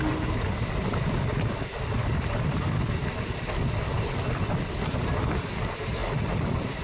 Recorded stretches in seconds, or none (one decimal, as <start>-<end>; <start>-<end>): 0.0-6.8